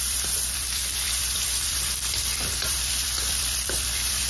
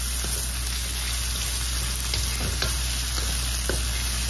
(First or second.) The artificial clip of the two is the first